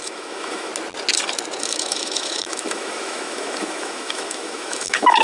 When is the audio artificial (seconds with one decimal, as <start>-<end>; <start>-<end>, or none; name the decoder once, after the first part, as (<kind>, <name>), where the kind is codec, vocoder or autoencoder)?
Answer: 0.0-0.7 (autoencoder, DAC-VAE); 1.6-5.2

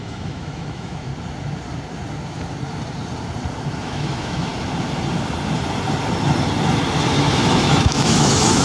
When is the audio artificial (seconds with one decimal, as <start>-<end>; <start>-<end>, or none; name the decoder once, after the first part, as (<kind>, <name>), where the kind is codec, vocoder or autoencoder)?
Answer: 0.0-1.1 (autoencoder, DAC-VAE); 3.8-4.5; 7.1-8.6

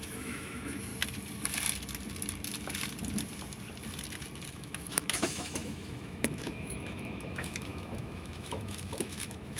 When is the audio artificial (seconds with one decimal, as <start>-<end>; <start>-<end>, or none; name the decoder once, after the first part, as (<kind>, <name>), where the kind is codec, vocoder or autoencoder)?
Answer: 0.0-0.9 (autoencoder, DAC-VAE); 4.5-9.6

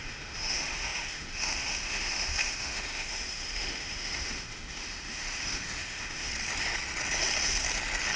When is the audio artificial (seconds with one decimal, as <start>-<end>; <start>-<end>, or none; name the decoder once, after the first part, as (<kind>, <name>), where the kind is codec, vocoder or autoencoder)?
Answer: 0.0-6.3 (autoencoder, DAC-VAE)

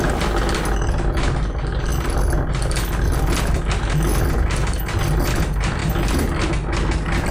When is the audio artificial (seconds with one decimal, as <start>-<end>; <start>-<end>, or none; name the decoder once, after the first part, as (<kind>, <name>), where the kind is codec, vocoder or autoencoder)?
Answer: none

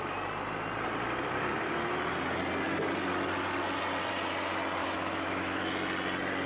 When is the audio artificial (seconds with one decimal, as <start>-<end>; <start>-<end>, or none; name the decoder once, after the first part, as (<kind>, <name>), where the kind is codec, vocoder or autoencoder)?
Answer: 4.8-5.6 (autoencoder, DAC-VAE)